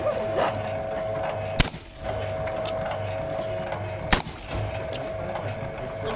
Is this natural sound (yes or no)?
yes